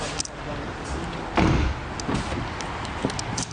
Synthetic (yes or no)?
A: no